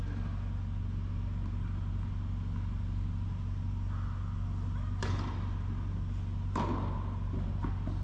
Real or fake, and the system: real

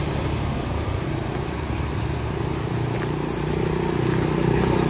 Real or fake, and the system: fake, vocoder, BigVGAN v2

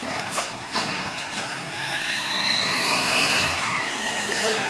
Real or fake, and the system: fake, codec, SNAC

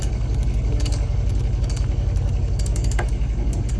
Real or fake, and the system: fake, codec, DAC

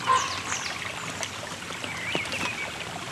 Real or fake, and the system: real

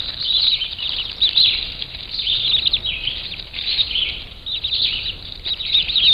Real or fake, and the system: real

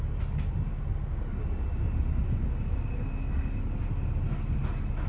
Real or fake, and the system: real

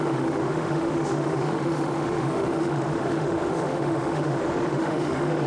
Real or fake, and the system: fake, autoencoder, DAC-VAE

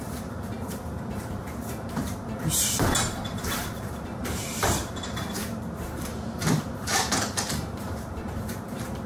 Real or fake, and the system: fake, vocoder, BigVGAN v2